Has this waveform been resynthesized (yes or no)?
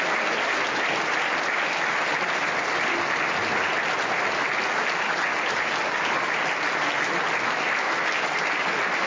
no